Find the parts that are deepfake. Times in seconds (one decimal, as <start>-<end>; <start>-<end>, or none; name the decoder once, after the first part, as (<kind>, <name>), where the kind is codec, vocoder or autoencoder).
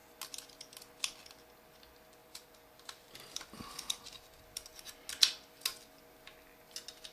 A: 2.2-4.4 (vocoder, BigVGAN v2)